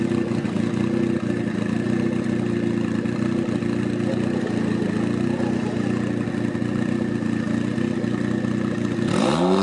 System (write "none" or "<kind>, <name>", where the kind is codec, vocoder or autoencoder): none